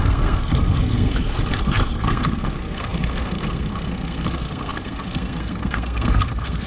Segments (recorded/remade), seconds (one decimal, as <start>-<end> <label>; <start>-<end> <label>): 0.0-6.7 remade